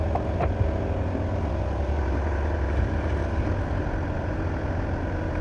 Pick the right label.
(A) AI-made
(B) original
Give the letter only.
B